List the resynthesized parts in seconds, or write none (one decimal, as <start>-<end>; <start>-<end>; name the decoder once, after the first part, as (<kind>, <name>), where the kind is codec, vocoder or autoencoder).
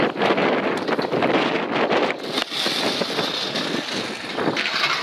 none